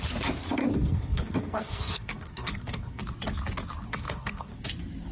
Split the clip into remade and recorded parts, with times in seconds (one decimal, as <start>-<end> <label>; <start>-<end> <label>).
0.0-0.6 recorded; 0.6-3.0 remade; 3.0-3.9 recorded; 3.9-4.6 remade; 4.6-5.1 recorded